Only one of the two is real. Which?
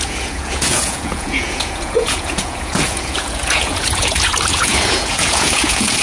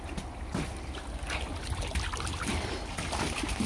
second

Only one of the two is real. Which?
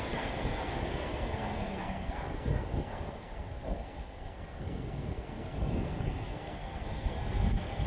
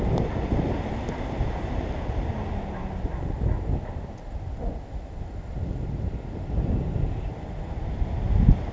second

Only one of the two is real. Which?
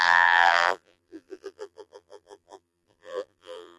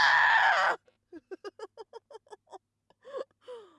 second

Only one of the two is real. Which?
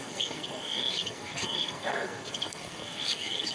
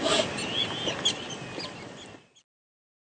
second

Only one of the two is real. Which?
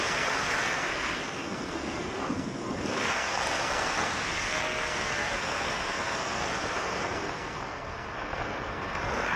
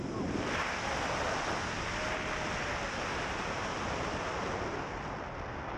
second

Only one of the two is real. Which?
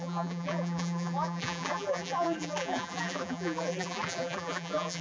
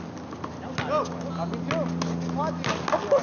second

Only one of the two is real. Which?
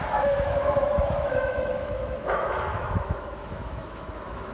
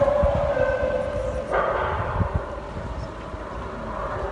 second